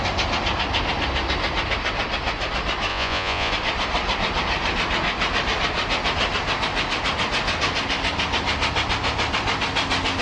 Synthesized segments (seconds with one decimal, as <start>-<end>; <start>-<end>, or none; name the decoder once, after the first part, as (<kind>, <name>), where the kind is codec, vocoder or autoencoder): 2.9-3.5 (vocoder, Vocos)